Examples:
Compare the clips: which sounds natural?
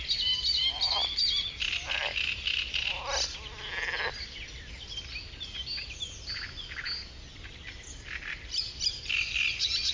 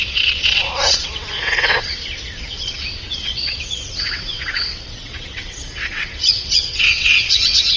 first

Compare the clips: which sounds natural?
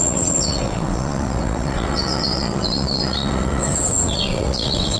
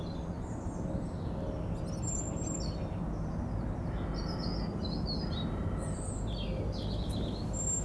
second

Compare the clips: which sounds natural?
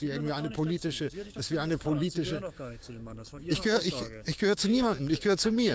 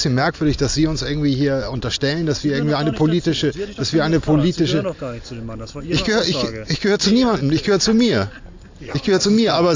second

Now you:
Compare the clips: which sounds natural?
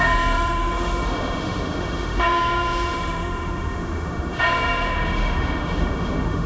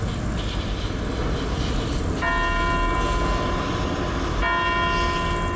second